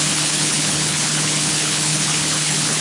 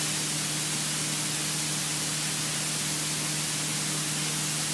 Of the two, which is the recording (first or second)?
second